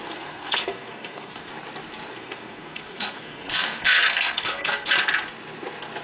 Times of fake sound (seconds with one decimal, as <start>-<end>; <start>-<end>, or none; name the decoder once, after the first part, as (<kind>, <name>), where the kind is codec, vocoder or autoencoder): 0.0-1.5 (codec, SNAC); 2.1-4.9